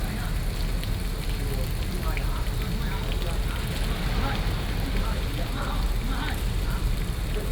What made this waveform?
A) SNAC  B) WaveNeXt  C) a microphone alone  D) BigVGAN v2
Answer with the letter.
C